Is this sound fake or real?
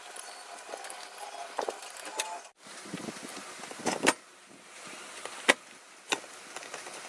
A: real